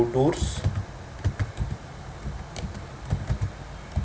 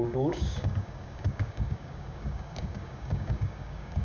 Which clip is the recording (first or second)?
first